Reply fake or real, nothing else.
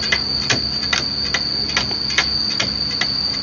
real